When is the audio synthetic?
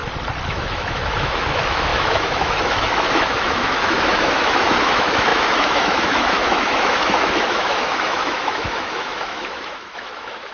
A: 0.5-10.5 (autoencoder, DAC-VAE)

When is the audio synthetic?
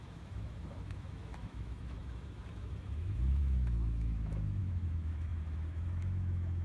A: 0.0-6.6 (autoencoder, DAC-VAE)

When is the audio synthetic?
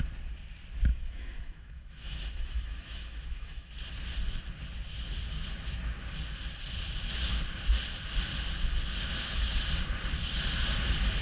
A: 0.9-3.7 (autoencoder, DAC-VAE)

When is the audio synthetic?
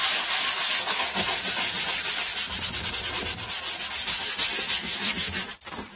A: 4.8-5.5 (autoencoder, DAC-VAE)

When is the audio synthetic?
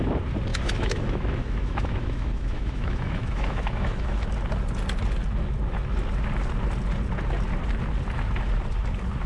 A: 0.5-4.3 (autoencoder, DAC-VAE)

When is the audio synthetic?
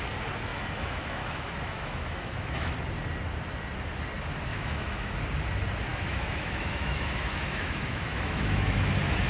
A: 0.5-2.7 (autoencoder, DAC-VAE); 4.5-5.2; 5.9-8.9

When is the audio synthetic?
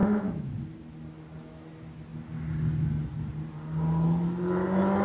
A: 0.0-0.5 (autoencoder, DAC-VAE)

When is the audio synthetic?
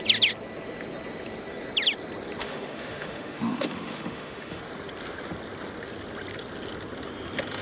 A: 2.4-4.6 (autoencoder, DAC-VAE)